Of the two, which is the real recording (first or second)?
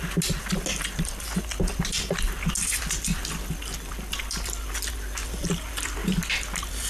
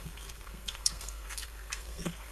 first